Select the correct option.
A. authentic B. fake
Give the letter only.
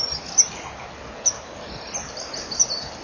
A